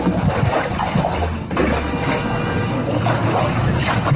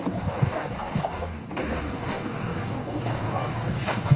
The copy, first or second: second